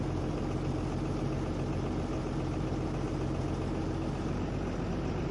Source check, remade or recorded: recorded